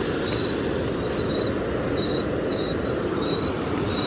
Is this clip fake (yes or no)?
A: no